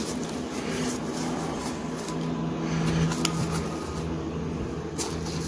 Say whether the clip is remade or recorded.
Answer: recorded